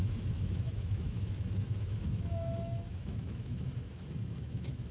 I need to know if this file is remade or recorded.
remade